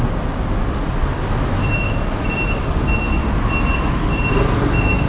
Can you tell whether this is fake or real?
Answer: real